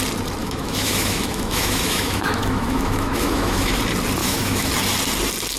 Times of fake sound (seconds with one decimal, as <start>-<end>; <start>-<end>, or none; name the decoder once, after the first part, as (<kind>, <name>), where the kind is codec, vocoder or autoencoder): 0.4-3.8 (autoencoder, DAC-VAE); 4.2-4.7